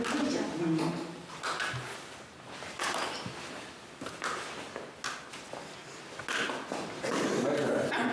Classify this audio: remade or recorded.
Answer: recorded